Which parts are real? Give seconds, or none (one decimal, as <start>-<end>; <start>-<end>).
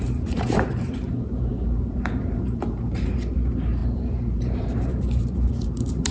none